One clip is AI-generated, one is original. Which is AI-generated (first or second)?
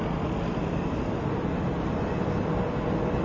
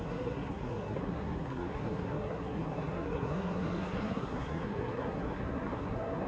second